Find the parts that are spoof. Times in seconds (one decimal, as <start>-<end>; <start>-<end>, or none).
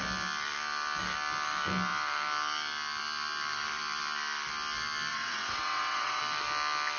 5.1-6.2